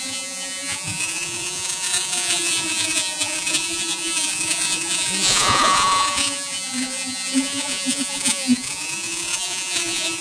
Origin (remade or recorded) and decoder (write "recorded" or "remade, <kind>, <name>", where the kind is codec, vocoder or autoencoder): remade, vocoder, Vocos